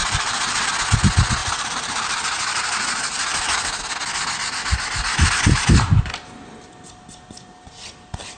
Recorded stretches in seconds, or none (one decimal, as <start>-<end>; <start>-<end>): 0.7-1.4; 3.8-8.4